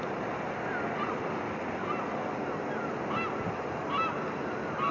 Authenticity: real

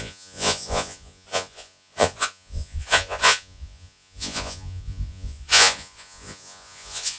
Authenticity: fake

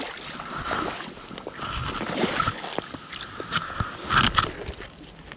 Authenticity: real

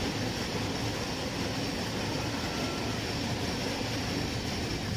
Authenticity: real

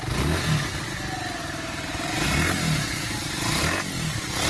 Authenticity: real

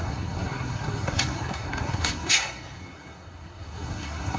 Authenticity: fake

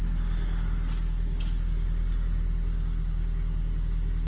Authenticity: real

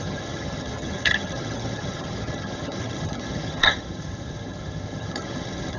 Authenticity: fake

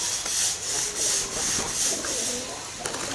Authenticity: real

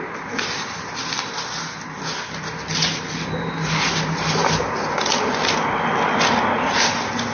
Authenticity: real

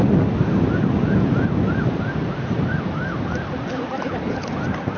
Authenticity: real